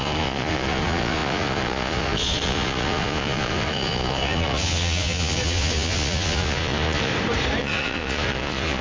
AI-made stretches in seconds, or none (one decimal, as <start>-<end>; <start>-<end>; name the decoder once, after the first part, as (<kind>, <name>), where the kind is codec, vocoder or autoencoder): 0.0-7.1 (vocoder, Vocos); 7.6-8.8